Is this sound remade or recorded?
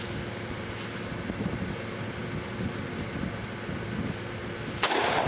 recorded